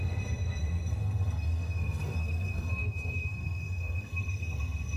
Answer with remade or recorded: remade